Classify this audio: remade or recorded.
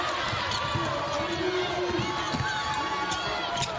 recorded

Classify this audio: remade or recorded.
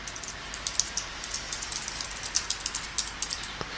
recorded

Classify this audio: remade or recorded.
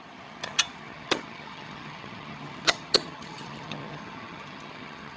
remade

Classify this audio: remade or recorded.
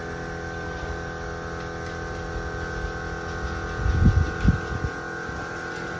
recorded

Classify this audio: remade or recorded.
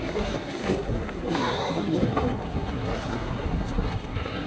remade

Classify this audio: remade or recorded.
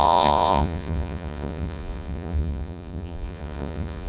remade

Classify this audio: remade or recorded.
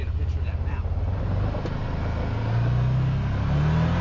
recorded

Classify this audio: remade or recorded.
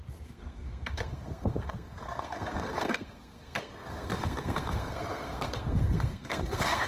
remade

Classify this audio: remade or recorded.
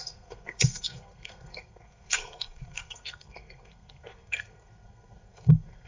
remade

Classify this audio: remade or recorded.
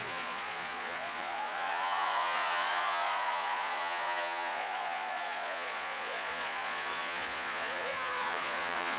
remade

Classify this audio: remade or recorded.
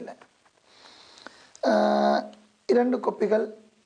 recorded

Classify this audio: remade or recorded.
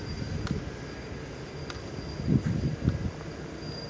recorded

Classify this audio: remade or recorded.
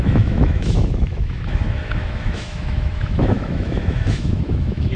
remade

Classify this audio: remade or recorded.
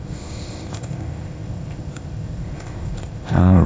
remade